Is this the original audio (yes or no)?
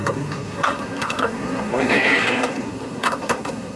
no